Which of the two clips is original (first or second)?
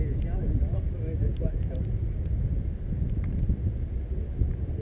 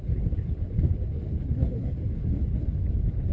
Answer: first